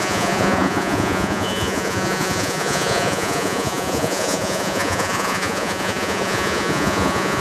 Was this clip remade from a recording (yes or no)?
yes